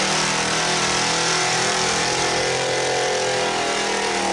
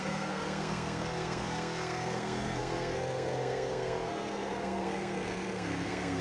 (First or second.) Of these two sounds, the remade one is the second